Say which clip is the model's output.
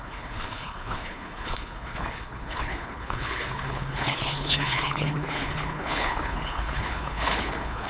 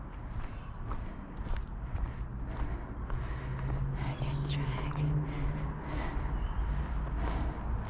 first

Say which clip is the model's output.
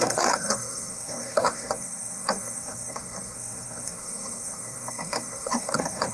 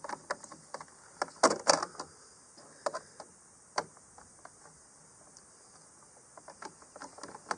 first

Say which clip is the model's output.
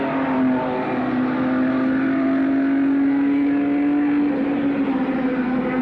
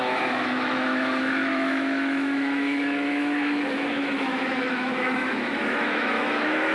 second